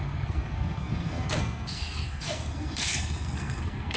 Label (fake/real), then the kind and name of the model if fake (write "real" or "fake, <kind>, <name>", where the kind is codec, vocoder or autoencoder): fake, codec, SNAC